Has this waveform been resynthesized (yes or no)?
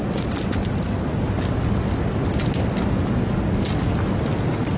no